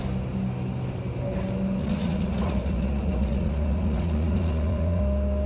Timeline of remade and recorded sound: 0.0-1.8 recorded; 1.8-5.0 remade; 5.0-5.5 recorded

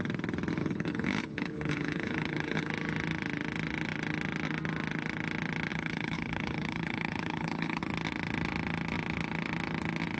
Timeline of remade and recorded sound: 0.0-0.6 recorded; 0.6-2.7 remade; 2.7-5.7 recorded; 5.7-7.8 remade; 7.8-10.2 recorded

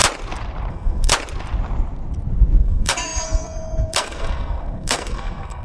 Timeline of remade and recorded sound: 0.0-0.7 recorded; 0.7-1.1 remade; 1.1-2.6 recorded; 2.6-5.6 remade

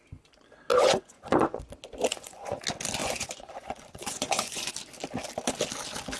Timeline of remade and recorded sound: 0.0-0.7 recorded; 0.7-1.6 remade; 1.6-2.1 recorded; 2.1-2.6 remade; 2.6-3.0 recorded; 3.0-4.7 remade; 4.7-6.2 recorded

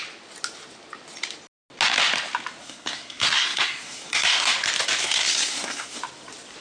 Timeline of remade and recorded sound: 0.0-2.6 recorded; 2.6-4.5 remade; 4.5-5.0 recorded; 5.0-6.0 remade; 6.0-6.6 recorded

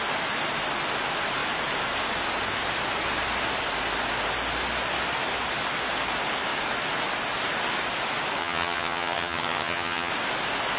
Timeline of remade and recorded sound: 0.0-8.4 recorded; 8.4-10.1 remade; 10.1-10.8 recorded

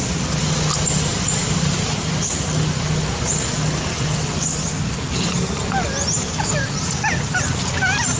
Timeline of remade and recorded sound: 0.0-8.2 recorded

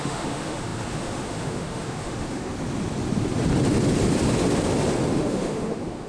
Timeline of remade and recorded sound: 0.0-2.5 remade; 2.5-5.1 recorded; 5.1-6.1 remade